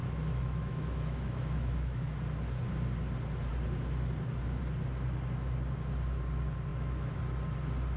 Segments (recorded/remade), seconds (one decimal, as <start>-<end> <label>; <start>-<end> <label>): 0.0-2.0 remade; 2.0-6.7 recorded; 6.7-7.2 remade; 7.2-8.0 recorded